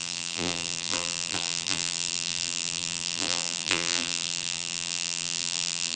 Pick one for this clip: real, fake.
fake